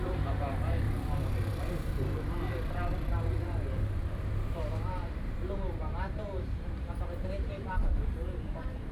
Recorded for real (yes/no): no